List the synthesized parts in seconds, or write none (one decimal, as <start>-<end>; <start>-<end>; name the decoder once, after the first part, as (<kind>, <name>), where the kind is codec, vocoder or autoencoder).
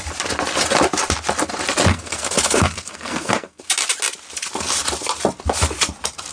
1.9-3.6 (codec, SNAC)